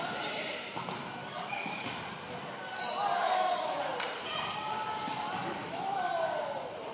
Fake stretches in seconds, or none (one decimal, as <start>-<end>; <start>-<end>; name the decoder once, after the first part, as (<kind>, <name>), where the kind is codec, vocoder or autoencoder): 1.2-1.9 (autoencoder, DAC-VAE); 3.1-3.8; 5.4-6.1